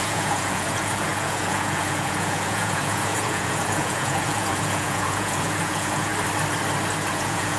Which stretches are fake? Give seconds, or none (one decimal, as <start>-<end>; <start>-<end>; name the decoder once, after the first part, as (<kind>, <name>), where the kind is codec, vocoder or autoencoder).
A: 0.0-6.1 (vocoder, Vocos); 7.1-7.6